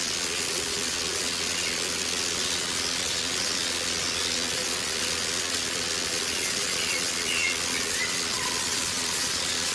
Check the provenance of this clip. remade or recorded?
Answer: remade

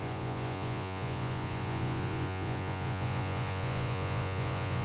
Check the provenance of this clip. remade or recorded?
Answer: remade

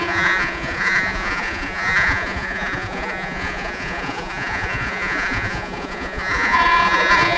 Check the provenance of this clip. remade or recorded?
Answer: remade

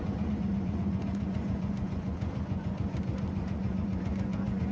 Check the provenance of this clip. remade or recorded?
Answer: remade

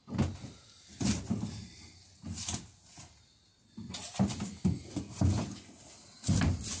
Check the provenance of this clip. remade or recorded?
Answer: recorded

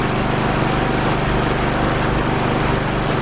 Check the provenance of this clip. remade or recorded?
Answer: recorded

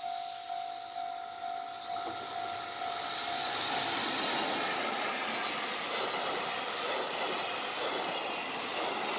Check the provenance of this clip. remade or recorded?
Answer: recorded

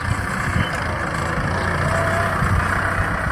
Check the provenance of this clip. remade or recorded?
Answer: recorded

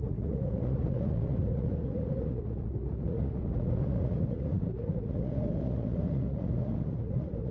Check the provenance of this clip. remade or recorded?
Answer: remade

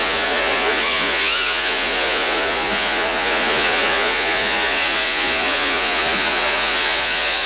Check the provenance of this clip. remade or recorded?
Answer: remade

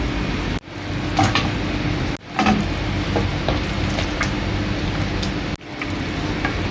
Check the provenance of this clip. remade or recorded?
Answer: recorded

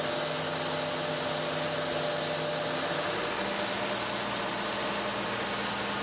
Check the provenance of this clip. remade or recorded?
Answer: recorded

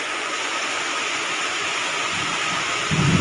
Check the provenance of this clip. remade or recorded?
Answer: remade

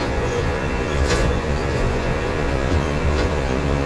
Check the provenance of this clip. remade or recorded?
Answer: remade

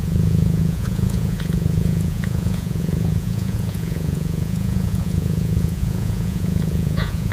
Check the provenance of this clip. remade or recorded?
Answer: remade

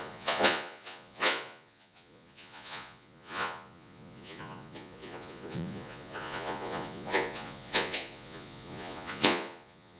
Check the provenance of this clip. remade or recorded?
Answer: remade